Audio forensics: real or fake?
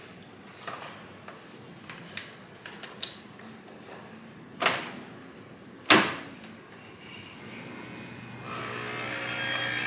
real